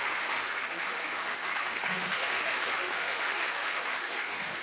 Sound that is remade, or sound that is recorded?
remade